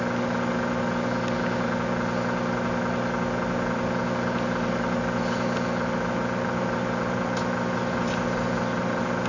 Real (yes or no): yes